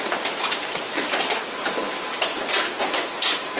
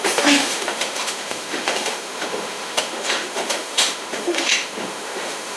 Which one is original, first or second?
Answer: first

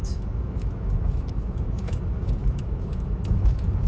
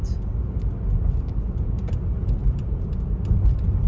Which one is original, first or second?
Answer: second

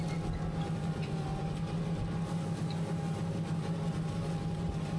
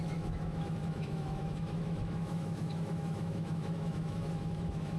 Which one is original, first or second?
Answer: first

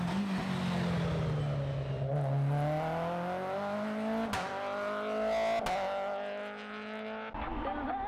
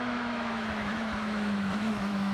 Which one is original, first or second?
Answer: first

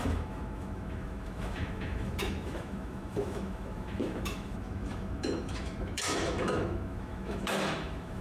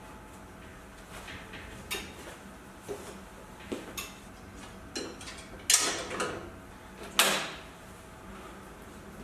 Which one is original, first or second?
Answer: second